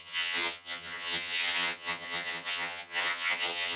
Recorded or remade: remade